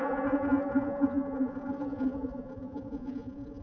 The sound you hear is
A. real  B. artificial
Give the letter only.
B